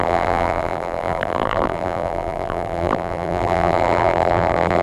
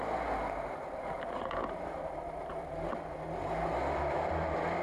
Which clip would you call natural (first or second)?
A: second